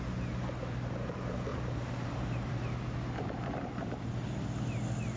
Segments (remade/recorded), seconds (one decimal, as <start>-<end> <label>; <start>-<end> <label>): 0.0-1.5 recorded; 1.5-4.3 remade; 4.3-5.2 recorded